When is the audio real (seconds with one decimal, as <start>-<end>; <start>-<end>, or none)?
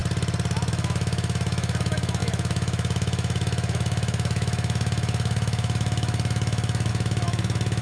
0.0-0.7